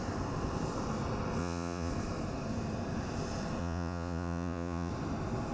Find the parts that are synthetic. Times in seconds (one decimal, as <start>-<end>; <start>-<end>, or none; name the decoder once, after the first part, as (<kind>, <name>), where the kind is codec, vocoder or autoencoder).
1.4-1.9 (vocoder, Vocos); 3.6-4.9